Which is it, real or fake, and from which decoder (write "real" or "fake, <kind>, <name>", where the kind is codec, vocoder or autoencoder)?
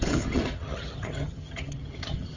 fake, vocoder, HiFi-GAN